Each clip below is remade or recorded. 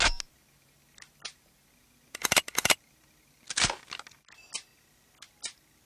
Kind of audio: recorded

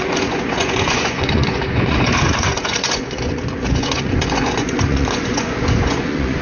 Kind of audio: remade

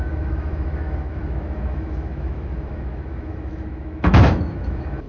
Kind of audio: remade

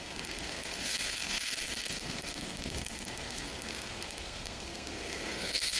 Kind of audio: remade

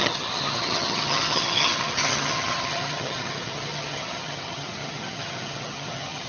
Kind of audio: remade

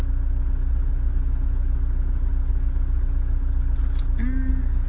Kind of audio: recorded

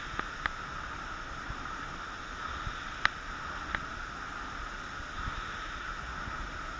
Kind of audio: recorded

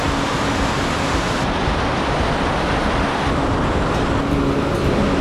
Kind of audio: recorded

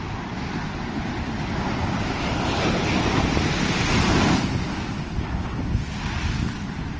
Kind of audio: recorded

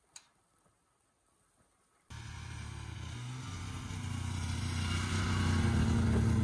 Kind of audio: recorded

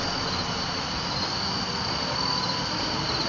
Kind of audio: recorded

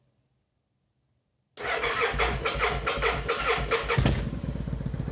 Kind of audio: recorded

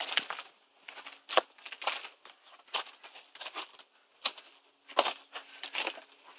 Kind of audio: recorded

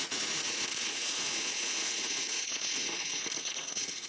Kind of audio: remade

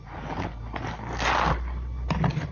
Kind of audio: recorded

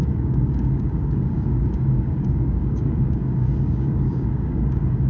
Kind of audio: remade